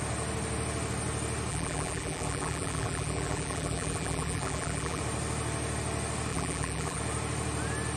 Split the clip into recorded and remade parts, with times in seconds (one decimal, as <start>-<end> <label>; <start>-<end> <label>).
0.0-1.5 recorded; 1.5-5.0 remade; 5.0-6.3 recorded; 6.3-7.0 remade; 7.0-8.0 recorded